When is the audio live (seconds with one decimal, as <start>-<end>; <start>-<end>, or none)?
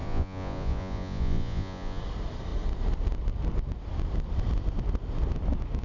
2.0-5.8